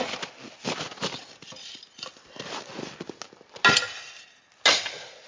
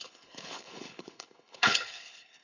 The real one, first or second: first